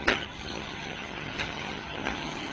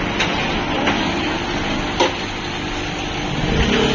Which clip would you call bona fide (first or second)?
second